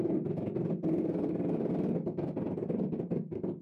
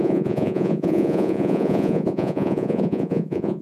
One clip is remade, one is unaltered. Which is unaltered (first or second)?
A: first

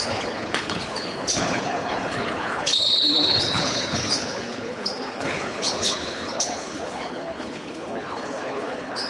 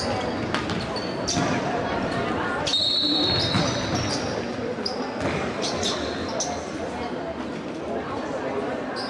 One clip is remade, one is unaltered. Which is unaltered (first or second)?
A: second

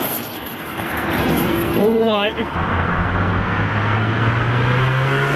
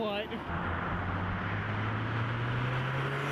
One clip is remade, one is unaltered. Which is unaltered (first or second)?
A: second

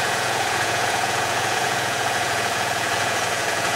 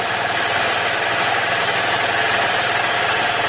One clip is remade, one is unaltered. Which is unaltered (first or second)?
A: second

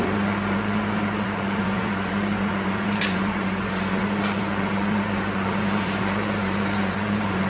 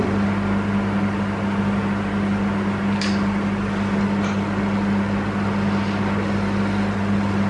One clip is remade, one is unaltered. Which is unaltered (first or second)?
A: second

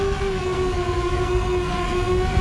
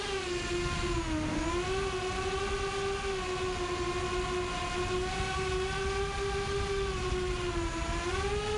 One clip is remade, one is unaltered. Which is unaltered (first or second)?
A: second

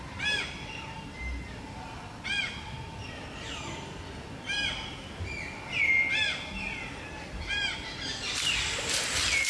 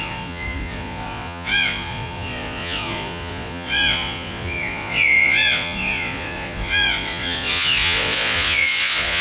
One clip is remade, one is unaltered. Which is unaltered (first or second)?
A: first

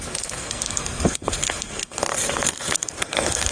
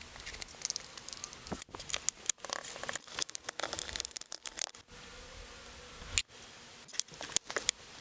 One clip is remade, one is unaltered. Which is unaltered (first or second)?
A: second